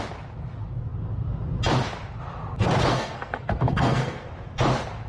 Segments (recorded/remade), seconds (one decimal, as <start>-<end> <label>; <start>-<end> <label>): 0.0-2.9 recorded; 2.9-4.3 remade; 4.3-5.1 recorded